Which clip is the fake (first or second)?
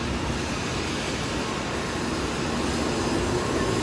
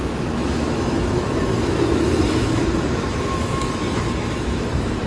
second